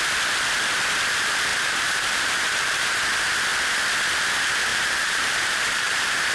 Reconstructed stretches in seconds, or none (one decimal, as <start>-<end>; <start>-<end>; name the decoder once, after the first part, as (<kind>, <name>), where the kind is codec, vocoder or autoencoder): 1.5-2.9 (vocoder, BigVGAN v2); 4.7-6.3

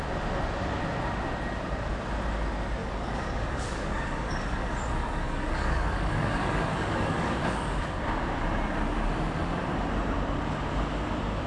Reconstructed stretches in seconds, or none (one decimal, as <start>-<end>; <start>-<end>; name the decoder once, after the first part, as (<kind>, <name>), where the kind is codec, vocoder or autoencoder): 2.8-7.8 (codec, DAC)

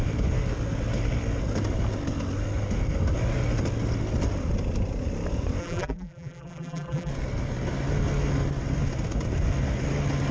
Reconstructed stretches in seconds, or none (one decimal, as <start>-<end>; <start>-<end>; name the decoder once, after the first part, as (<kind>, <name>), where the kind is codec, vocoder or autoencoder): 5.6-7.1 (vocoder, BigVGAN v2)

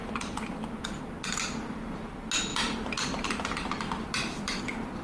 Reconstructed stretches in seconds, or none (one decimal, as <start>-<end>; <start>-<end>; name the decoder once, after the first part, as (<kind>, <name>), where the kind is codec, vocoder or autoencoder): 0.0-0.8 (vocoder, BigVGAN v2); 2.5-4.6

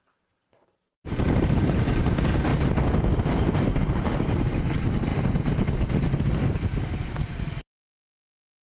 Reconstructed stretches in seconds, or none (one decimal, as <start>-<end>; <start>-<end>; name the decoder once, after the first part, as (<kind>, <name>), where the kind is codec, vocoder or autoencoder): 0.0-2.5 (vocoder, BigVGAN v2); 3.2-5.1; 6.5-8.6

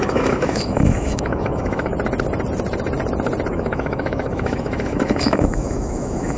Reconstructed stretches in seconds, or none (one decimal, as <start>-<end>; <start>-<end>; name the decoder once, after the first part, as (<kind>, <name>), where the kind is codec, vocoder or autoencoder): 0.0-1.9 (autoencoder, DAC-VAE); 3.5-6.4